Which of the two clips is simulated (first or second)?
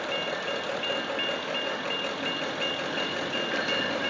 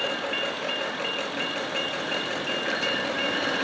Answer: second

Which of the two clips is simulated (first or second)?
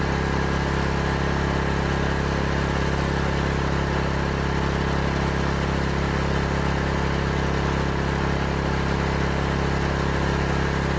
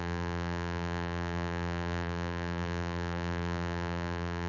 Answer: second